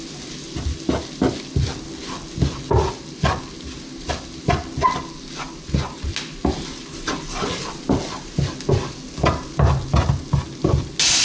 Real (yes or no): yes